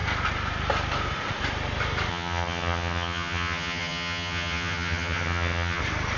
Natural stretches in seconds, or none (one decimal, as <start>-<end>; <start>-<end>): 0.0-2.1; 5.8-6.2